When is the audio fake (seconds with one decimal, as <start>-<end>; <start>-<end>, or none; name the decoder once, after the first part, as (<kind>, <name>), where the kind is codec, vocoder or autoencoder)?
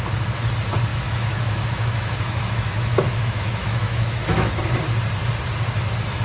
0.9-4.6 (autoencoder, DAC-VAE)